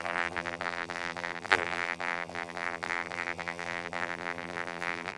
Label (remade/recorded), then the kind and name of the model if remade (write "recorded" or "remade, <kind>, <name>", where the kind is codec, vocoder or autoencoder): remade, vocoder, BigVGAN v2